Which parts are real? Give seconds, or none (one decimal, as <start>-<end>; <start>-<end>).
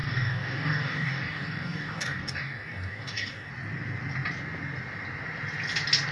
3.5-6.1